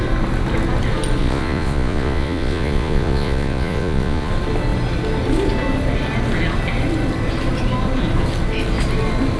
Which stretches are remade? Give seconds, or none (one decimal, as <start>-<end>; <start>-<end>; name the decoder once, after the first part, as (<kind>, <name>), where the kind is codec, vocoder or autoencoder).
1.2-4.3 (vocoder, Vocos)